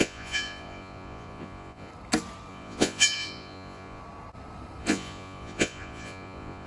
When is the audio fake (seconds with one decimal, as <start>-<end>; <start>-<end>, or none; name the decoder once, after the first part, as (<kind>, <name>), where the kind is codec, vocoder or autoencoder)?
0.0-1.9 (vocoder, Vocos); 2.5-4.0; 4.8-6.7